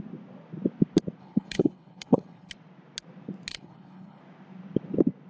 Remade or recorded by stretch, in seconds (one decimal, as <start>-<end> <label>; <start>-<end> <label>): 0.0-1.2 recorded; 1.2-2.5 remade; 2.5-3.5 recorded; 3.5-4.2 remade; 4.2-5.3 recorded